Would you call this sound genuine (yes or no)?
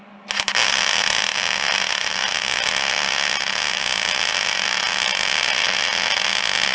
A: yes